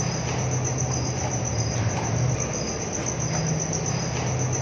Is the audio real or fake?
real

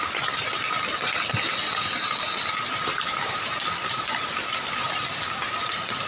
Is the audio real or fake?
real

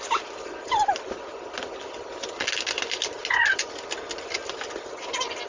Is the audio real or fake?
real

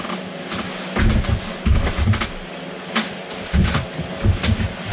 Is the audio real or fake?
real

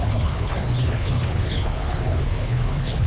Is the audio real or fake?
fake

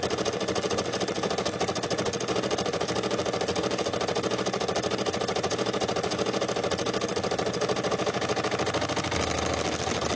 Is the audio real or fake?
real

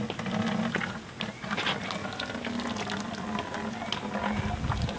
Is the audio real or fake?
real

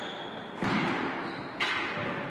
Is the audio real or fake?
real